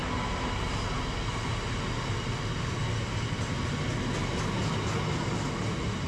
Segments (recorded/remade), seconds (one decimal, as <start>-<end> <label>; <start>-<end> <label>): 0.0-6.1 recorded